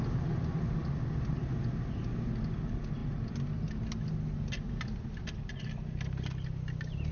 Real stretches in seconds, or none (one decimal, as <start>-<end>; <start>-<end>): 0.0-7.1